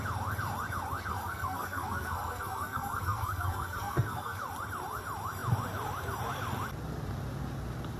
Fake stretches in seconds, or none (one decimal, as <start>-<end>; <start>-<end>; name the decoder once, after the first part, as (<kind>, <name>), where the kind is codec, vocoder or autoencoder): 1.1-4.4 (codec, SNAC)